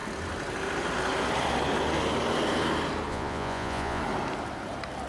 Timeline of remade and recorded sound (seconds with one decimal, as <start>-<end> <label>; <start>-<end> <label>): 0.0-3.1 recorded; 3.1-4.0 remade; 4.0-5.1 recorded

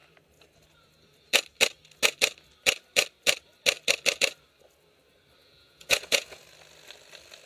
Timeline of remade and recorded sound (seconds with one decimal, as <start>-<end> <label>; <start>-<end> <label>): 0.0-5.4 recorded; 5.4-6.4 remade; 6.4-7.5 recorded